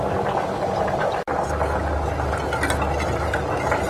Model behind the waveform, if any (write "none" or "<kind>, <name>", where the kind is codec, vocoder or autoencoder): none